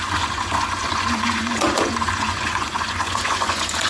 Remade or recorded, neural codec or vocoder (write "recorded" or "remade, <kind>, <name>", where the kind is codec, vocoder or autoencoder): remade, vocoder, Vocos